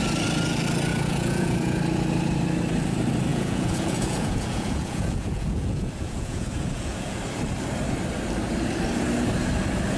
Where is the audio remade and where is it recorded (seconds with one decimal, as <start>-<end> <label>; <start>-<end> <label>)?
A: 0.0-0.9 recorded; 0.9-1.8 remade; 1.8-3.3 recorded; 3.3-7.2 remade; 7.2-10.0 recorded